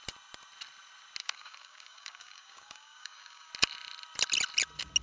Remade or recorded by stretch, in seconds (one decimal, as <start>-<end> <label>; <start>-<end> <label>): 0.0-1.2 recorded; 1.2-3.5 remade; 3.5-5.0 recorded